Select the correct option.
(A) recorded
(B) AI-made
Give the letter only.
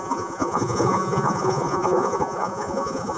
B